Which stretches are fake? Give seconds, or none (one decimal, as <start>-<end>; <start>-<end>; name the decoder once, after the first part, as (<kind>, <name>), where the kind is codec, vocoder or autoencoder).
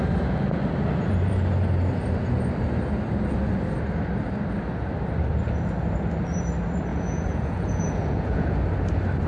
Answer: 6.9-8.6 (vocoder, Vocos)